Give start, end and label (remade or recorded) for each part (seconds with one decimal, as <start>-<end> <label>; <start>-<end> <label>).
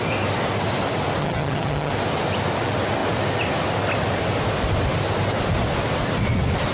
0.0-1.2 recorded; 1.2-1.9 remade; 1.9-6.7 recorded